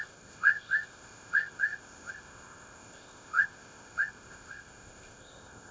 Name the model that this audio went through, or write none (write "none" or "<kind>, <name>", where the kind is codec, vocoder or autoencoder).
codec, ZipCodec